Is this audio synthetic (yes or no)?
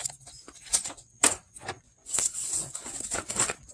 yes